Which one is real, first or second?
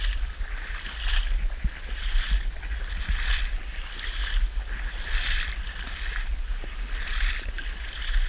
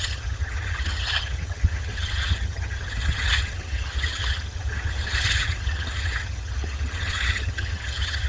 first